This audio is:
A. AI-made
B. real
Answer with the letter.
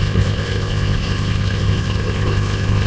A